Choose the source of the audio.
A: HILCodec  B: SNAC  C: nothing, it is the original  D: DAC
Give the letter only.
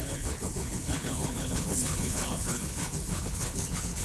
A